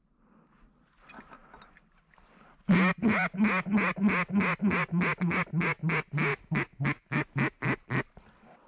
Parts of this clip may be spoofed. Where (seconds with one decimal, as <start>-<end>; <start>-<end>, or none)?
6.3-7.3